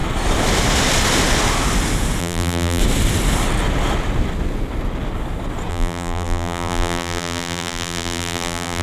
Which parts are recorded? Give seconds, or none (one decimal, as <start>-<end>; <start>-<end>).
0.0-2.2; 2.8-5.7